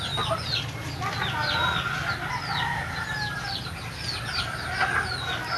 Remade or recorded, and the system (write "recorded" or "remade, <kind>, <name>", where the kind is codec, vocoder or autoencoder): recorded